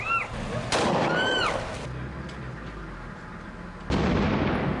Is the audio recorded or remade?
recorded